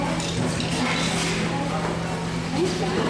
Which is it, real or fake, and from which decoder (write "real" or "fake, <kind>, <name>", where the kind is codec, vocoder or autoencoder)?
real